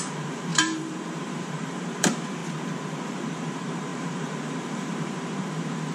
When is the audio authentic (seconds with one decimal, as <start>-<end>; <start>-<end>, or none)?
2.4-3.1